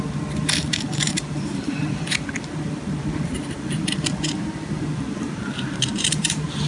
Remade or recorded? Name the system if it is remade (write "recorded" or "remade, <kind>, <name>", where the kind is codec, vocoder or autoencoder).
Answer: remade, vocoder, BigVGAN v2